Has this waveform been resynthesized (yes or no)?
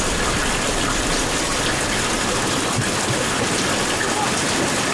no